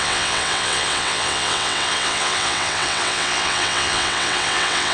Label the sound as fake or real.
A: fake